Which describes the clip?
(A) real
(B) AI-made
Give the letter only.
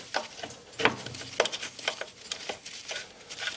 A